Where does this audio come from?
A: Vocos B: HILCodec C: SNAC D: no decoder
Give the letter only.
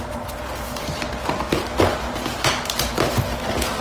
D